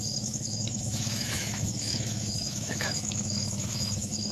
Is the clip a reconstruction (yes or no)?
yes